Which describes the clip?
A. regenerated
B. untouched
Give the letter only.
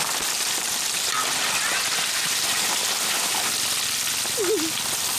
B